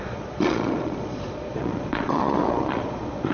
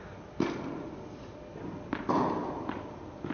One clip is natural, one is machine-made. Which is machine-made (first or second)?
first